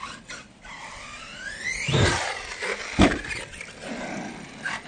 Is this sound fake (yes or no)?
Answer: no